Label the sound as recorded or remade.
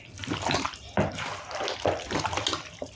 recorded